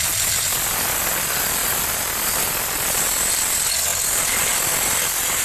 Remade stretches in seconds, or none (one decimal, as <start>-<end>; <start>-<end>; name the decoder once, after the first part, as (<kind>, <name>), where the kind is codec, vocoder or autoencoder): none